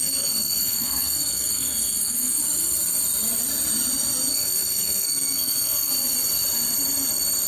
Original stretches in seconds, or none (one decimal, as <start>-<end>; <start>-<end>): 2.4-4.3; 5.9-7.5